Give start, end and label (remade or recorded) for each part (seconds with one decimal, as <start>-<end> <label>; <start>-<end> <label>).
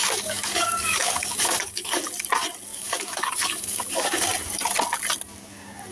0.0-2.0 remade; 2.0-2.7 recorded; 2.7-4.2 remade; 4.2-5.9 recorded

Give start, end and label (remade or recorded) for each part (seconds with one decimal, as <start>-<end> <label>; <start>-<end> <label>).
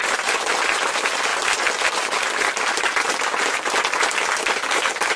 0.0-5.2 recorded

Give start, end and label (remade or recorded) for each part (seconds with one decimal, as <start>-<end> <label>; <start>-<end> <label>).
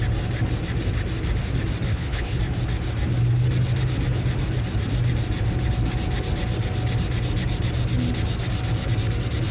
0.0-1.9 recorded; 1.9-2.4 remade; 2.4-9.5 recorded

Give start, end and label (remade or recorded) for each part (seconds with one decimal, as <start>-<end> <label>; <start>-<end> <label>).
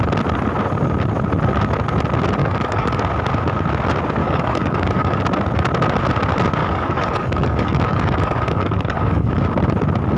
0.0-2.4 recorded; 2.4-3.0 remade; 3.0-4.2 recorded; 4.2-5.2 remade; 5.2-6.6 recorded; 6.6-9.4 remade; 9.4-10.2 recorded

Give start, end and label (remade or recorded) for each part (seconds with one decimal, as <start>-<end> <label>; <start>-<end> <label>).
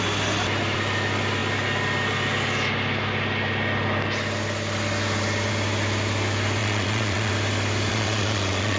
0.0-6.6 recorded; 6.6-7.3 remade; 7.3-7.9 recorded; 7.9-8.8 remade